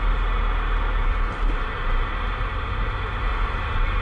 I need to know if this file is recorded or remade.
recorded